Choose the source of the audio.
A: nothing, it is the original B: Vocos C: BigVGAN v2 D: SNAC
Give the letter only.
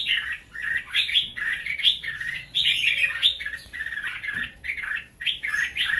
B